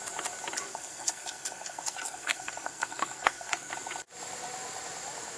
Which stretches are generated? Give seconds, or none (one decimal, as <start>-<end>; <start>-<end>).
0.7-3.7